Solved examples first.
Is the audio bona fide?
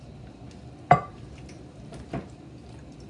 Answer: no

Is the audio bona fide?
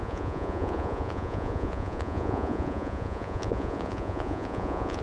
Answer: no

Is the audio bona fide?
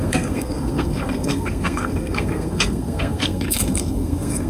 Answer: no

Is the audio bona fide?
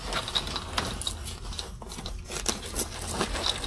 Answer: yes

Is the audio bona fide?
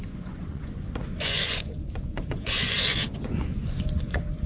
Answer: no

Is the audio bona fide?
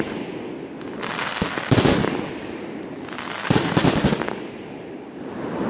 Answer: yes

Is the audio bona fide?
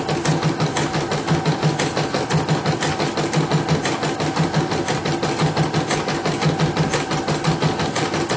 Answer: yes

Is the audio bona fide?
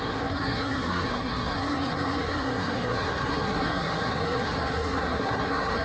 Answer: no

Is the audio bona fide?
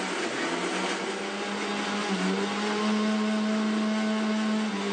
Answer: yes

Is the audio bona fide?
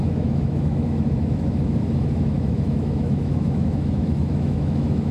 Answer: no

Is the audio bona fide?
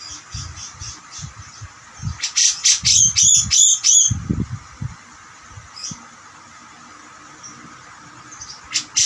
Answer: yes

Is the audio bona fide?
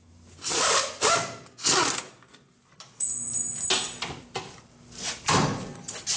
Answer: yes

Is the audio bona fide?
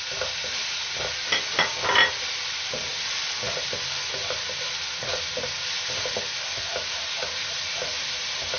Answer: yes